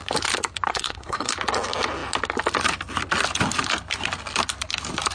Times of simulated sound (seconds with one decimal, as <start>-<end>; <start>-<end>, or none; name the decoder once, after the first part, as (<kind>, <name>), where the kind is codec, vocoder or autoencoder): 0.7-1.3 (codec, SNAC)